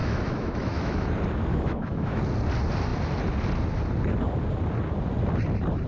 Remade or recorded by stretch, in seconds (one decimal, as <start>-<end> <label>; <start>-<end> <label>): 0.0-1.1 remade; 1.1-1.5 recorded; 1.5-2.2 remade; 2.2-5.9 recorded